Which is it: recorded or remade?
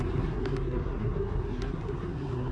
remade